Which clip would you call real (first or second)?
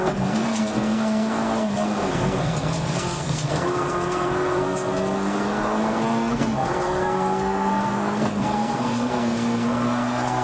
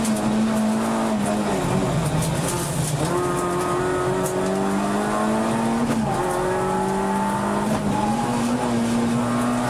second